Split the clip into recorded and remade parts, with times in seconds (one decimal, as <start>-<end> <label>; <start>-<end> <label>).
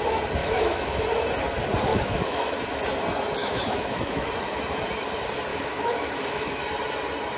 0.0-0.4 recorded; 0.4-1.0 remade; 1.0-1.9 recorded; 1.9-2.6 remade; 2.6-3.4 recorded; 3.4-4.3 remade; 4.3-5.5 recorded; 5.5-6.6 remade; 6.6-7.4 recorded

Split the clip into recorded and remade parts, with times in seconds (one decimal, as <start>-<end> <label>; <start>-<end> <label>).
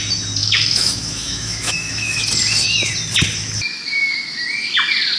0.0-0.4 recorded; 0.4-2.2 remade; 2.2-5.2 recorded